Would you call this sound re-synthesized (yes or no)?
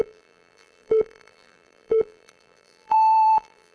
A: yes